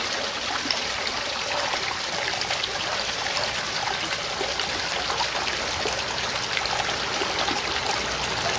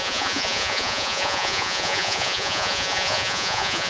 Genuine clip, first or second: first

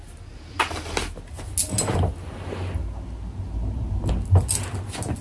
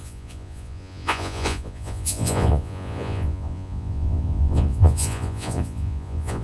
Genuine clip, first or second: first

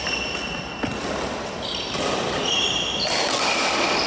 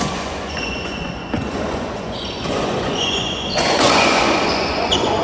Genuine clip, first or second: first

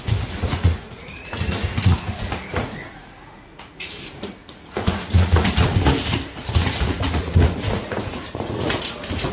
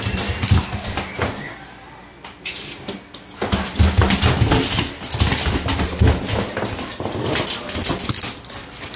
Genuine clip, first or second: second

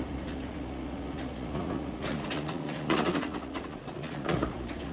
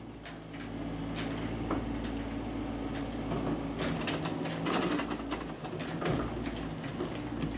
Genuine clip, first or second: second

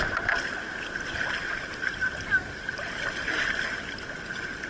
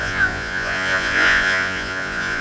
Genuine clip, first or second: first